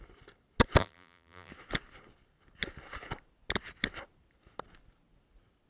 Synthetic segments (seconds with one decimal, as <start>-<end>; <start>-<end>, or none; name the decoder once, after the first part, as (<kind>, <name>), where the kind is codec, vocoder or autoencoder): 0.8-1.5 (vocoder, BigVGAN v2)